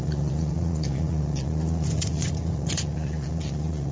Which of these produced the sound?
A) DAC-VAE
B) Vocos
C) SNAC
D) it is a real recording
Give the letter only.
B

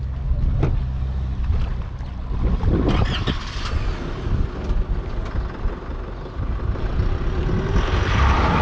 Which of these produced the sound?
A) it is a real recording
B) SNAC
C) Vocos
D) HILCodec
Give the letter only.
A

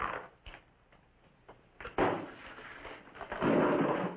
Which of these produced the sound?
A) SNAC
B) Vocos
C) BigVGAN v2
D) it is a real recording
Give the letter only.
D